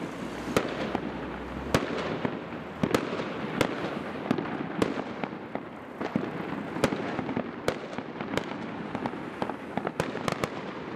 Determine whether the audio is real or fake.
real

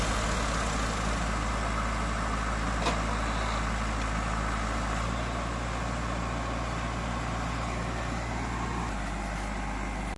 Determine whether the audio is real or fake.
real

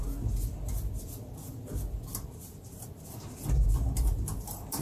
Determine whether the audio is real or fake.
real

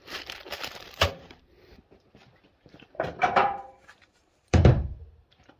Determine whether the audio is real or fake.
fake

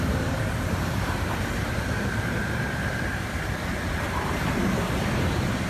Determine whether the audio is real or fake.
fake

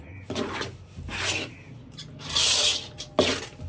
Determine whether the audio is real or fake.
real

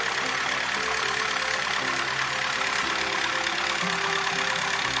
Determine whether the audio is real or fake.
fake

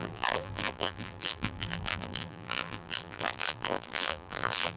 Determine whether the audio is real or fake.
fake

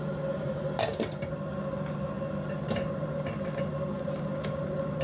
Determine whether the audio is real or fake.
real